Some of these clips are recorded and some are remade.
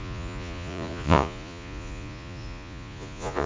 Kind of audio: remade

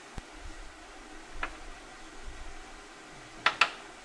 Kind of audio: recorded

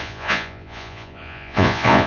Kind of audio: remade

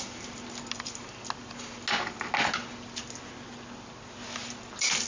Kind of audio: recorded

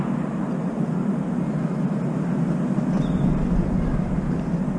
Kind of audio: recorded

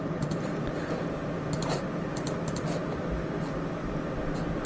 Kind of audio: recorded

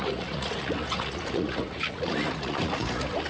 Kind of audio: remade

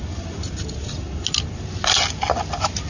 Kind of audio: recorded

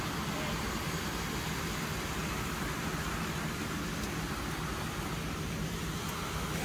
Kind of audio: recorded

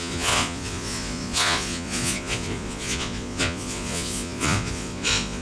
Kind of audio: remade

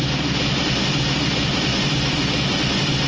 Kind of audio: recorded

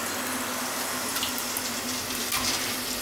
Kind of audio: recorded